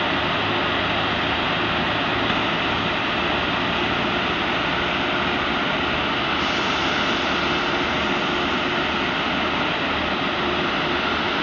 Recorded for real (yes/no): yes